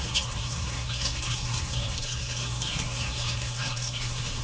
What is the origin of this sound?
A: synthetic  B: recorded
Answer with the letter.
A